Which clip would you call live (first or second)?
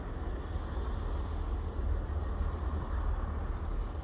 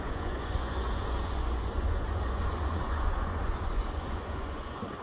first